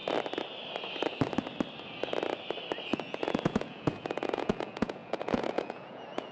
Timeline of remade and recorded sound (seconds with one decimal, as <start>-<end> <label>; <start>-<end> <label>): 0.0-2.9 recorded; 2.9-6.3 remade